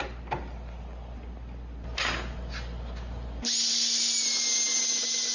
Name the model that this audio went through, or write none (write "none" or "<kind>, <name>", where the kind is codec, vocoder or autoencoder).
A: none